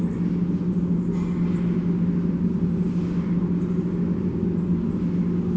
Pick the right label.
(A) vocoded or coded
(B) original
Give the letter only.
B